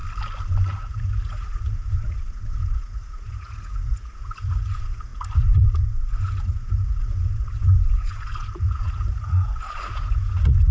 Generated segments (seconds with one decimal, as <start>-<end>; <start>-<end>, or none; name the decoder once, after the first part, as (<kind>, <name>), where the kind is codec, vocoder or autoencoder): 0.8-10.7 (vocoder, Vocos)

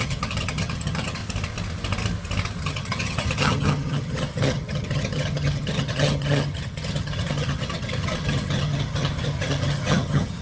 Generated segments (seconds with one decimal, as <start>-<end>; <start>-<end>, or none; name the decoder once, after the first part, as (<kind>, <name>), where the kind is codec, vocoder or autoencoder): 0.0-1.2 (vocoder, HiFi-GAN); 2.6-10.4